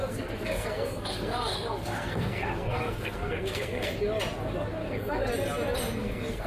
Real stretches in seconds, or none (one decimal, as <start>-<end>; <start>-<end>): 3.9-4.8; 5.3-6.0